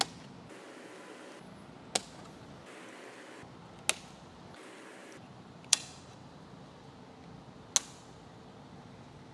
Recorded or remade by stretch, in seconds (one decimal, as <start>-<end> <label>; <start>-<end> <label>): 0.0-5.0 recorded; 5.0-6.0 remade; 6.0-9.3 recorded